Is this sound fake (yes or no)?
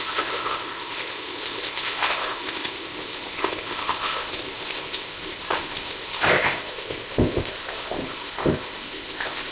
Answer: yes